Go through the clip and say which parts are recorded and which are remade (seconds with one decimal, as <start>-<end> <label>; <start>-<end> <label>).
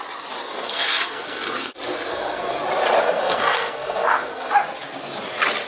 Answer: 0.0-0.4 recorded; 0.4-1.7 remade; 1.7-2.1 recorded; 2.1-2.6 remade; 2.6-3.0 recorded; 3.0-4.5 remade; 4.5-5.7 recorded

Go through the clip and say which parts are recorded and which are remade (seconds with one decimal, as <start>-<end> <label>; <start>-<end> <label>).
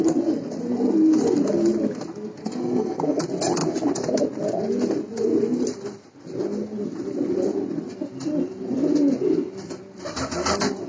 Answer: 0.0-2.4 recorded; 2.4-3.2 remade; 3.2-10.9 recorded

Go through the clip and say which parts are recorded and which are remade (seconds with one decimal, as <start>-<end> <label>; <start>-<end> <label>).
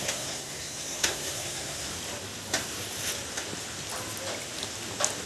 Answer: 0.0-1.9 remade; 1.9-5.3 recorded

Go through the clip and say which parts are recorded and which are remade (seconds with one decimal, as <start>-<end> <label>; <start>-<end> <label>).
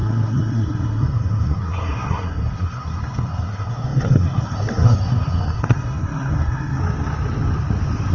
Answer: 0.0-6.8 remade; 6.8-8.1 recorded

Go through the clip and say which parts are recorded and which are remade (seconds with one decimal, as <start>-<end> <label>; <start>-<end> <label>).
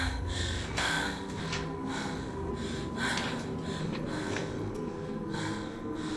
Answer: 0.0-2.5 remade; 2.5-3.8 recorded; 3.8-6.2 remade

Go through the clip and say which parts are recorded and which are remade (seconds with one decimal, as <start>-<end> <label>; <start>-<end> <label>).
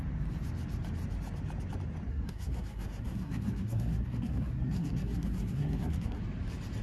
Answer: 0.0-2.1 recorded; 2.1-6.2 remade; 6.2-6.8 recorded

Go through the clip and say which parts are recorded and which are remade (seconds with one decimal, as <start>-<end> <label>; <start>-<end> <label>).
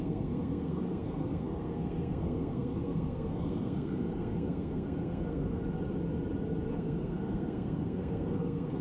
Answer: 0.0-5.6 remade; 5.6-6.7 recorded; 6.7-8.8 remade